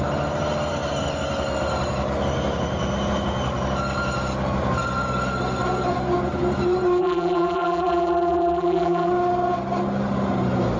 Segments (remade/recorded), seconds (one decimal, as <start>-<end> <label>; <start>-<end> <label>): 0.0-7.0 recorded; 7.0-9.1 remade; 9.1-10.8 recorded